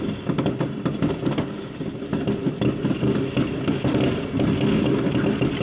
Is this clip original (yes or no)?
yes